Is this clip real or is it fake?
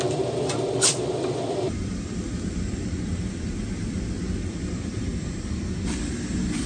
fake